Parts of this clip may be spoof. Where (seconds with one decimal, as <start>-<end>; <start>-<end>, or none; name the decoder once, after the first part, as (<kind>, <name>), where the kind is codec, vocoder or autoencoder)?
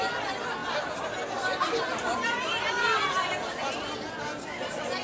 none